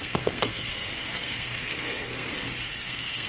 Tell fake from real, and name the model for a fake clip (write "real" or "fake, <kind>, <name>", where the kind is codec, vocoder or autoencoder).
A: fake, codec, SNAC